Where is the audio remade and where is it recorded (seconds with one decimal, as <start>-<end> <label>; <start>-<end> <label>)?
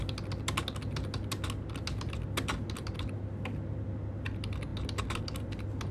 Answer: 0.0-5.9 recorded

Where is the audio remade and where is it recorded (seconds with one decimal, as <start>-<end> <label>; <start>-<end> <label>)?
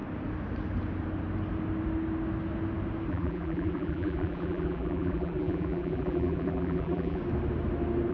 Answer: 0.0-3.1 recorded; 3.1-7.2 remade; 7.2-8.1 recorded